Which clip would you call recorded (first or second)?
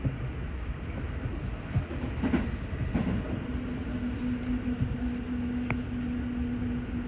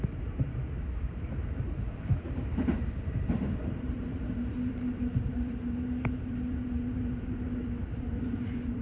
first